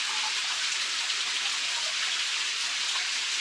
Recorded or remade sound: recorded